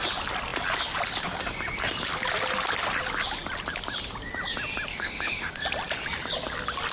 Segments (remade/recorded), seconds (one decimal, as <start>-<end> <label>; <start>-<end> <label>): 0.0-4.9 recorded; 4.9-5.5 remade; 5.5-6.9 recorded